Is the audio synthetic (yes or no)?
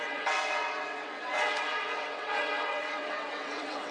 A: yes